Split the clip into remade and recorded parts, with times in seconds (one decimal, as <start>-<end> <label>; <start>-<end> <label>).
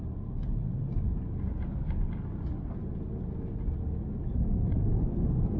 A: 0.0-5.6 recorded